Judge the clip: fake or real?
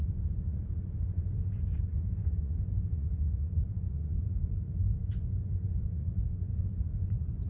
fake